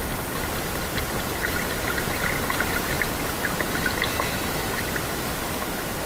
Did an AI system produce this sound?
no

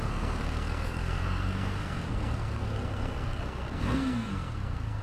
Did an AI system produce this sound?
yes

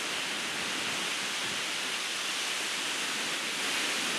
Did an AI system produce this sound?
no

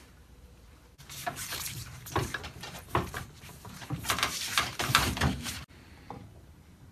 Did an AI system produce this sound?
yes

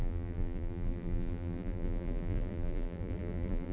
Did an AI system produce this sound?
yes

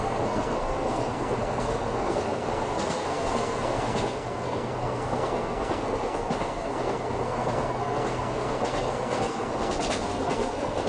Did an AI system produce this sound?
yes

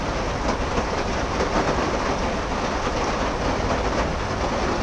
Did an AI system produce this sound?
no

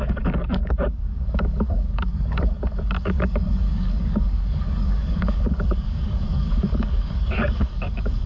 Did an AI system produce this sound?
yes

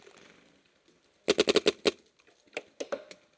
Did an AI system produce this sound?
no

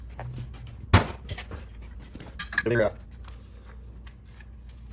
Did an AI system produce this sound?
no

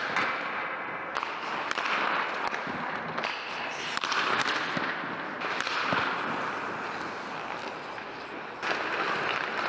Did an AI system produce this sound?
no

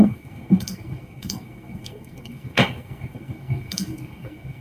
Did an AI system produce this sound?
yes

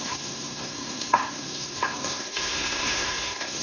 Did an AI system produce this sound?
yes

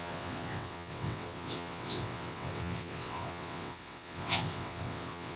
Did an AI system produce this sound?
yes